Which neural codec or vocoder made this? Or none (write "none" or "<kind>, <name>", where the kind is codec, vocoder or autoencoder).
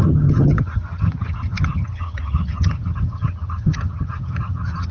vocoder, HiFi-GAN